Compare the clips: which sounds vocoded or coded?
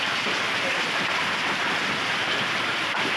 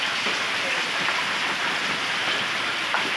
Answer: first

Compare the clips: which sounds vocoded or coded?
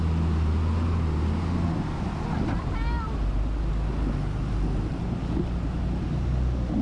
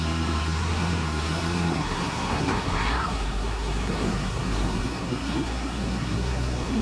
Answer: second